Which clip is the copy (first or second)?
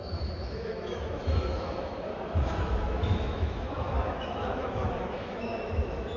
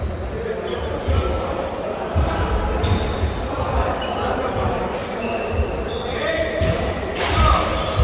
first